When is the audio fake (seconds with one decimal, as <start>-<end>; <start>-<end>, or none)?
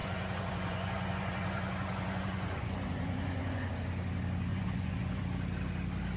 0.0-3.7; 4.5-5.2